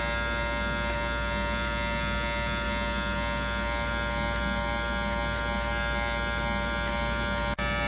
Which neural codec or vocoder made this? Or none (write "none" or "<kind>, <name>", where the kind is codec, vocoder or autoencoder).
none